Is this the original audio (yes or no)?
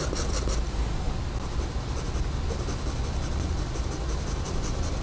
yes